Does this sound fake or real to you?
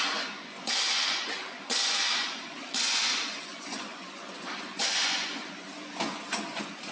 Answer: fake